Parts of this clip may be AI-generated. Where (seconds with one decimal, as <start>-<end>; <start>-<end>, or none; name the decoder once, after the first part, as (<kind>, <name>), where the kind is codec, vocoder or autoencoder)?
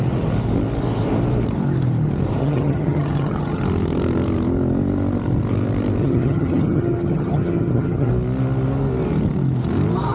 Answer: 2.4-3.6 (vocoder, HiFi-GAN); 6.0-8.1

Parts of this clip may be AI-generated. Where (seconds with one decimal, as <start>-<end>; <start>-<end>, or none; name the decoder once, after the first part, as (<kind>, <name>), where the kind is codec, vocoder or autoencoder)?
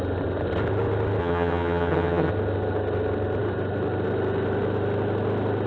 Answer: 1.2-2.3 (vocoder, HiFi-GAN)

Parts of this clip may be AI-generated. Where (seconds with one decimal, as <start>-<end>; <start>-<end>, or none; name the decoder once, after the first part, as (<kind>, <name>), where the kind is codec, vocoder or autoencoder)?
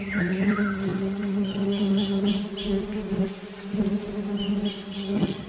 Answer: 0.0-2.3 (vocoder, HiFi-GAN); 4.9-5.5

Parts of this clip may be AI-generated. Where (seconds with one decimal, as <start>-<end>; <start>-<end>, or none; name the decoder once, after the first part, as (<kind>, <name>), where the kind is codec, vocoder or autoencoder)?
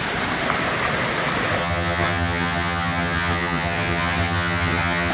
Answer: 1.6-5.1 (vocoder, HiFi-GAN)